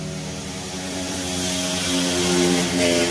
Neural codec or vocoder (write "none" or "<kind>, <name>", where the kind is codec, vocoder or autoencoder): none